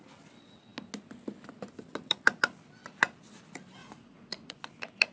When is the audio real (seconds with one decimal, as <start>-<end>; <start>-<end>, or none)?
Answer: 0.0-3.8; 4.6-5.1